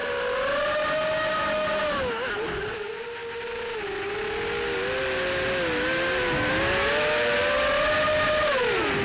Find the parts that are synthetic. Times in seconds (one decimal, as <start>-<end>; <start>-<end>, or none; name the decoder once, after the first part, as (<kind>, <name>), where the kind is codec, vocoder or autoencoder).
none